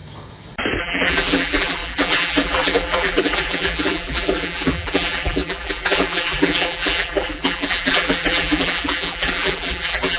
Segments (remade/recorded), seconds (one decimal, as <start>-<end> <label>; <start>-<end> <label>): 0.0-0.8 recorded; 0.8-10.2 remade